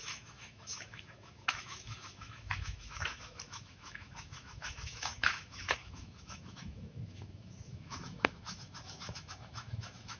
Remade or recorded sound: remade